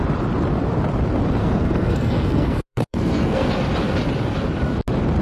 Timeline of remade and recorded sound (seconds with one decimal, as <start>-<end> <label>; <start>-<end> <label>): 0.0-1.4 recorded; 1.4-3.5 remade; 3.5-5.2 recorded